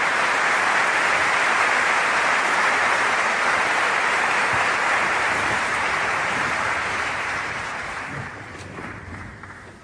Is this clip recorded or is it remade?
remade